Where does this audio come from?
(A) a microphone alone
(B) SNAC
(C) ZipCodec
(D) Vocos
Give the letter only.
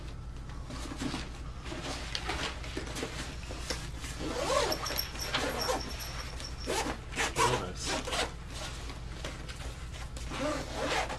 A